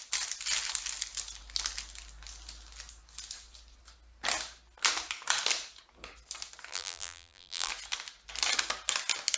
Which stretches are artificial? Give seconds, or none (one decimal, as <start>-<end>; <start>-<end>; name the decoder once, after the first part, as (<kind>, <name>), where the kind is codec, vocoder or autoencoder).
6.7-7.7 (vocoder, BigVGAN v2)